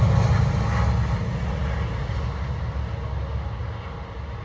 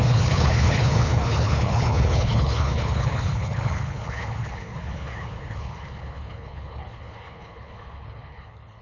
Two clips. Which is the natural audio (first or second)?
first